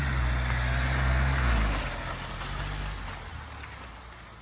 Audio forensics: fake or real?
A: real